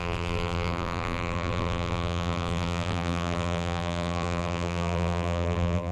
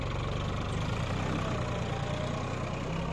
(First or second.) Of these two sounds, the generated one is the first